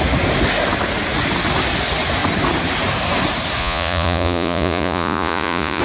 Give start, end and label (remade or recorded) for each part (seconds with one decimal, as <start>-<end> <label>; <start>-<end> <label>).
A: 0.0-3.6 recorded; 3.6-5.8 remade